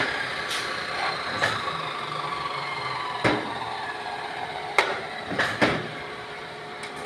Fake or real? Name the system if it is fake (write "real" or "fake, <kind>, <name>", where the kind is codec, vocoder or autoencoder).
fake, vocoder, BigVGAN v2